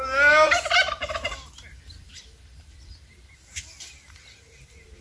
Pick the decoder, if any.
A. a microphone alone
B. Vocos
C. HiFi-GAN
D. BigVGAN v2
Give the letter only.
A